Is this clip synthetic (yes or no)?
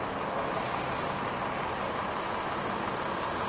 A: no